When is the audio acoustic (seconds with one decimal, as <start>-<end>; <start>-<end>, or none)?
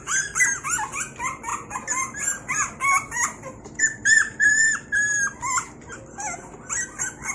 0.0-1.5; 5.9-7.3